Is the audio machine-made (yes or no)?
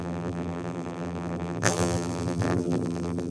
yes